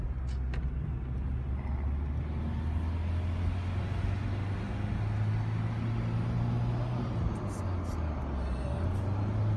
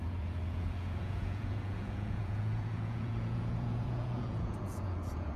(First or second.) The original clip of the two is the first